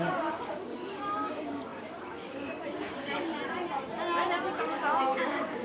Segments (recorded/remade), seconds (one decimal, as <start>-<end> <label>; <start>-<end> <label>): 0.0-3.3 remade; 3.3-4.6 recorded; 4.6-5.6 remade